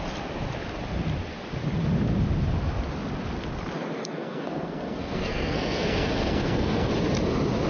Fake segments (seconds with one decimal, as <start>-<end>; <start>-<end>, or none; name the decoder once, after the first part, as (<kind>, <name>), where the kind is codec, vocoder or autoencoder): 4.0-6.9 (codec, SNAC)